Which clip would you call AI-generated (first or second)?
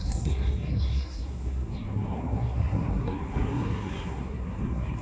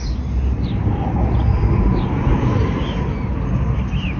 first